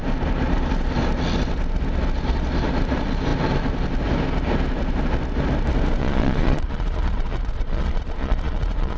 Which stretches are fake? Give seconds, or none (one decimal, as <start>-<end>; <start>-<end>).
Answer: 6.0-9.0